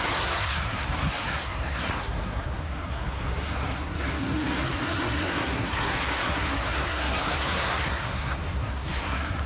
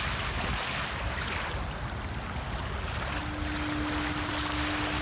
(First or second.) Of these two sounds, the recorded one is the second